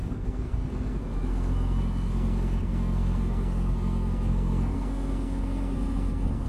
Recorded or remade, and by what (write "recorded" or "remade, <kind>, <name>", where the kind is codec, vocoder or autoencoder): remade, codec, SNAC